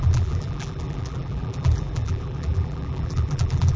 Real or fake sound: fake